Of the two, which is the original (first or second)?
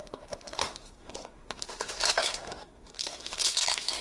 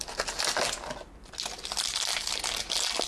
second